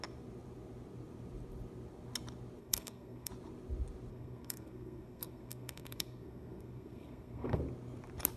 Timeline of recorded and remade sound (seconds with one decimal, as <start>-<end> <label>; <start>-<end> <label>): 0.0-2.6 recorded; 2.6-3.3 remade; 3.3-4.1 recorded; 4.1-7.6 remade; 7.6-8.4 recorded